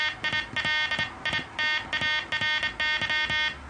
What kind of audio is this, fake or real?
real